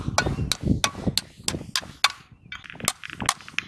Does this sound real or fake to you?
real